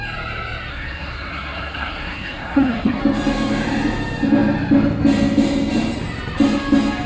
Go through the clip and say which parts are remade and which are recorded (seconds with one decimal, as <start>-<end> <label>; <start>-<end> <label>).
0.0-0.7 recorded; 0.7-3.0 remade; 3.0-7.1 recorded